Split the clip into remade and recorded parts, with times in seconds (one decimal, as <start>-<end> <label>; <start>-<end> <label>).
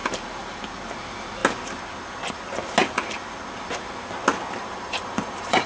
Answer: 0.0-0.6 remade; 0.6-4.6 recorded; 4.6-5.7 remade